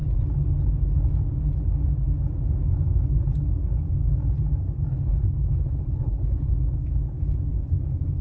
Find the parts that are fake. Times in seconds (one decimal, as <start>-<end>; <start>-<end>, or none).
4.9-6.5